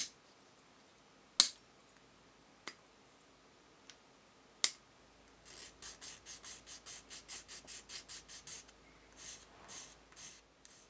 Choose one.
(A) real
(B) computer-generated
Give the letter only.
A